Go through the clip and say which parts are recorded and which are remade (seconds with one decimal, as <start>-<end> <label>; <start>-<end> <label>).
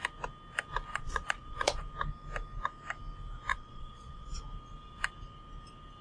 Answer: 0.0-0.9 recorded; 0.9-1.8 remade; 1.8-3.5 recorded; 3.5-4.4 remade; 4.4-6.0 recorded